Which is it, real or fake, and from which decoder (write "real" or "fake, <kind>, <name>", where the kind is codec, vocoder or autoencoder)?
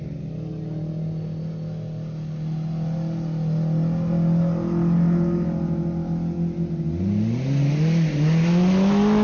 real